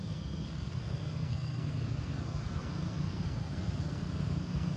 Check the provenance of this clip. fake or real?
fake